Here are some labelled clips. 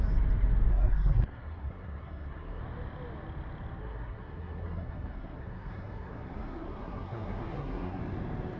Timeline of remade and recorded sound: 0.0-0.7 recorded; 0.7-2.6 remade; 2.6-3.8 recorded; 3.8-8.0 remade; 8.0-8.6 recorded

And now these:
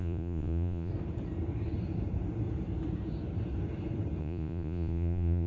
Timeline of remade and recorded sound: 0.0-0.9 remade; 0.9-4.2 recorded; 4.2-5.5 remade

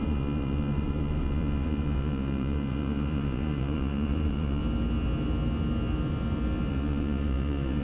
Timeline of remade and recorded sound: 0.0-4.6 remade; 4.6-6.7 recorded; 6.7-7.8 remade

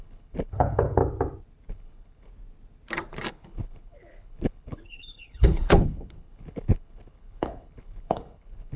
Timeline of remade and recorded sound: 0.0-1.0 remade; 1.0-1.7 recorded; 1.7-2.3 remade; 2.3-3.3 recorded; 3.3-8.8 remade

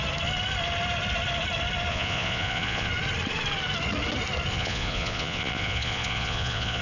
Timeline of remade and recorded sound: 0.0-1.9 recorded; 1.9-2.9 remade; 2.9-4.5 recorded; 4.5-6.8 remade